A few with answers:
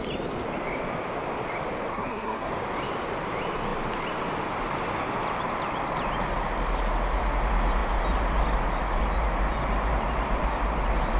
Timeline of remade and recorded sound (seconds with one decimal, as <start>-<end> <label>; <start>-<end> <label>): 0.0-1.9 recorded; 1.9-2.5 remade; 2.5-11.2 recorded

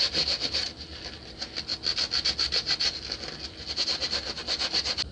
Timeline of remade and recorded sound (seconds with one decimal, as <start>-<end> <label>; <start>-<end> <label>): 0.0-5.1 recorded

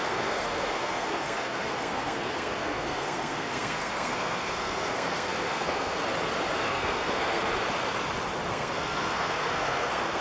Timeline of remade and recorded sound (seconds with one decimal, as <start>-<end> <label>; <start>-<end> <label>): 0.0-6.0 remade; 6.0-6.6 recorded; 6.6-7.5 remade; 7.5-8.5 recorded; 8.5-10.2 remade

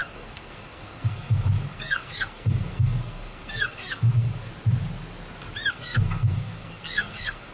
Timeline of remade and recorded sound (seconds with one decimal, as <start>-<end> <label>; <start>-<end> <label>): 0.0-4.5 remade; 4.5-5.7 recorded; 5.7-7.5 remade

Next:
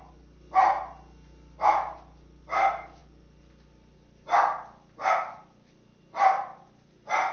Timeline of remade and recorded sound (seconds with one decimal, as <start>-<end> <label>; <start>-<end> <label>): 0.0-7.3 recorded